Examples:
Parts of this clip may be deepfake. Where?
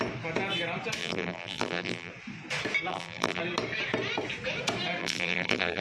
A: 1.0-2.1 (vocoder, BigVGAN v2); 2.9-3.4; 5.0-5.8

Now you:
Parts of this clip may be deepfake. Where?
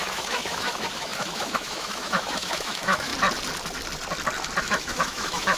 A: 0.0-3.1 (autoencoder, DAC-VAE); 4.6-5.6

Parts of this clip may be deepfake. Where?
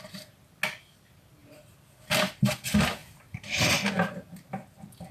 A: 3.0-4.1 (vocoder, BigVGAN v2)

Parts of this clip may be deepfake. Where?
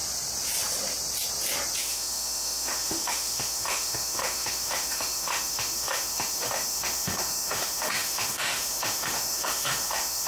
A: 1.8-10.3 (autoencoder, DAC-VAE)